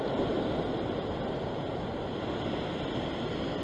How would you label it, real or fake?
real